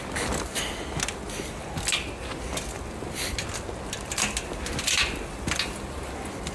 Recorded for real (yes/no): yes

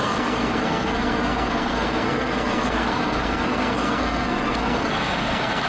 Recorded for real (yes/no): no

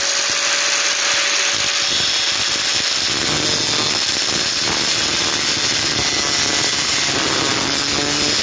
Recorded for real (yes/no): yes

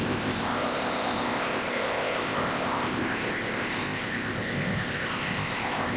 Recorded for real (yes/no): no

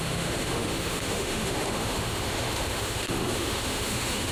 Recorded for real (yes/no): no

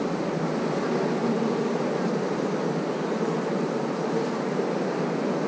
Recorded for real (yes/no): yes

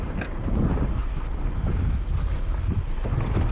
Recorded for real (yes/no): yes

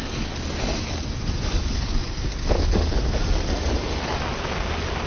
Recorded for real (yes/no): yes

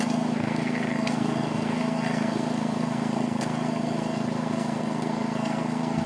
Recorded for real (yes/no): no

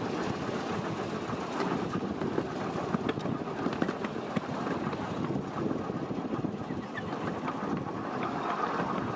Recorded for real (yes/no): yes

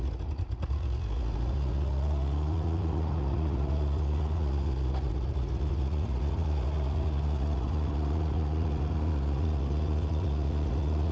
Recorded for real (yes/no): no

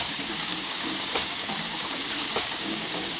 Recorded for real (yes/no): no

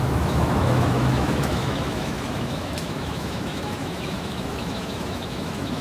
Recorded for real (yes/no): no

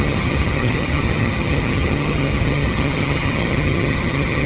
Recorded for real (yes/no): no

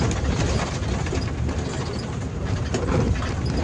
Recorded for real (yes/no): no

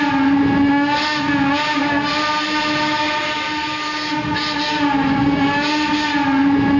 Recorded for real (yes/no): yes